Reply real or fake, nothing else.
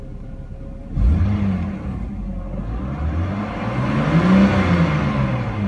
real